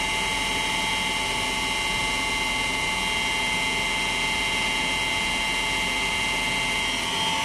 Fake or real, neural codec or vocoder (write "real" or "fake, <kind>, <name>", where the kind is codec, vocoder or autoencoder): real